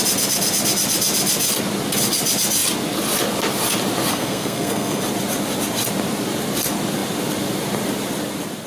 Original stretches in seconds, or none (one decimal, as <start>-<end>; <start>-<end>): 0.0-4.1; 5.0-8.7